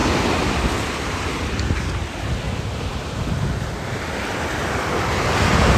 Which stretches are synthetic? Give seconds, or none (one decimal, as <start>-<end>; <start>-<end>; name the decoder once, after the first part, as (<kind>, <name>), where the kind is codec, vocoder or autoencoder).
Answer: 0.0-1.7 (vocoder, BigVGAN v2); 2.9-4.4